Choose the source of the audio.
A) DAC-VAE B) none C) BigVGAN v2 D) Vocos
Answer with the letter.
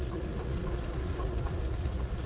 D